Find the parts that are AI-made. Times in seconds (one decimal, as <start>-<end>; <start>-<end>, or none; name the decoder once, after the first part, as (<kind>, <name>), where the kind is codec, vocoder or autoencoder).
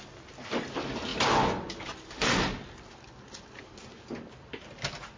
none